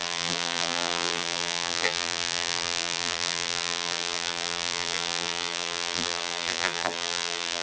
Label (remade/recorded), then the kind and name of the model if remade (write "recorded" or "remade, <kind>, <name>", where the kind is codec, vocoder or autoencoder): remade, vocoder, BigVGAN v2